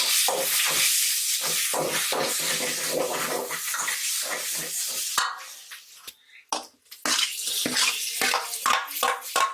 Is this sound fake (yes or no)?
no